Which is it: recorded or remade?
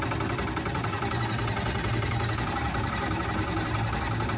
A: recorded